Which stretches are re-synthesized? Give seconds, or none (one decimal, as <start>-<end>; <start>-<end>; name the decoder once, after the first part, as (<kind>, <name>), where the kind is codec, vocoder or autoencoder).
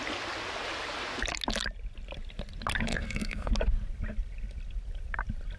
2.9-3.5 (codec, SNAC)